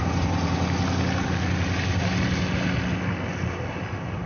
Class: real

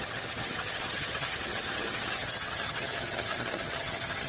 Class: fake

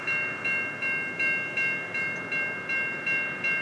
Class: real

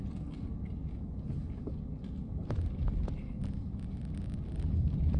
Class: real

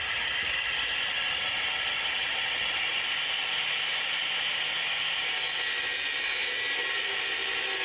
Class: real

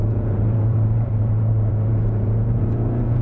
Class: fake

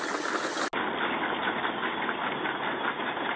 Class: real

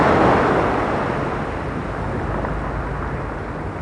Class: real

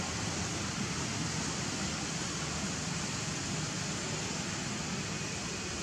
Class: real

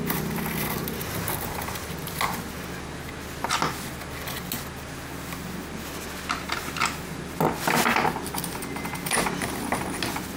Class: real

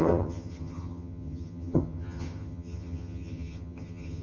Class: fake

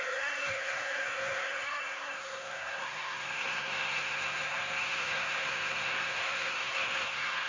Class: fake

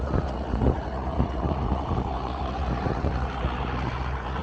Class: fake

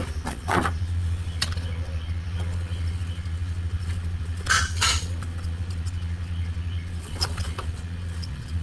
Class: fake